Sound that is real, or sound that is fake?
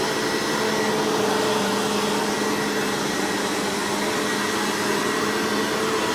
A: real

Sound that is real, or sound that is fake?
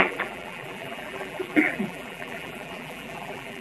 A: fake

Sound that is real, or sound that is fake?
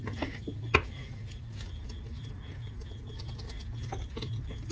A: fake